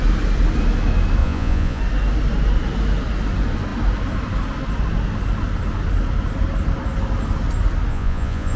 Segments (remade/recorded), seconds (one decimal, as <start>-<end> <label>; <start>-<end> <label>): 0.0-1.2 recorded; 1.2-1.8 remade; 1.8-7.9 recorded; 7.9-8.6 remade